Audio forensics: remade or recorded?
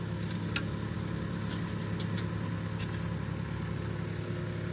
recorded